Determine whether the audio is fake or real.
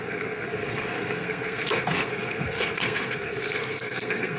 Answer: fake